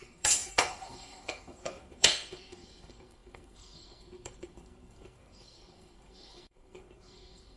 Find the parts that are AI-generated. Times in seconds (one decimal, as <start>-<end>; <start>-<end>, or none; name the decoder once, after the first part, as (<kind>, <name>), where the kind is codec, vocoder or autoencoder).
0.0-7.6 (codec, SNAC)